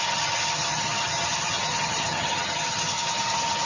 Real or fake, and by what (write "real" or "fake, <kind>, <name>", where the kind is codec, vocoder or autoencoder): fake, vocoder, HiFi-GAN